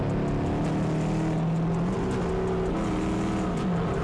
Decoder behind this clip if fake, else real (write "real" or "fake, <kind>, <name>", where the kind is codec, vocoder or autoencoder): real